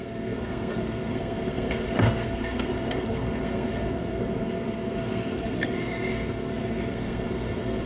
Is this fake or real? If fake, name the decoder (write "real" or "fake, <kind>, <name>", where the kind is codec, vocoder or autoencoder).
fake, codec, SNAC